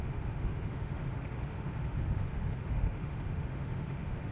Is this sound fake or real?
fake